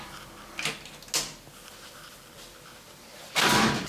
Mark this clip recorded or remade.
recorded